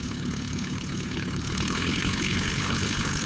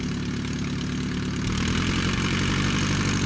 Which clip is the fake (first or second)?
first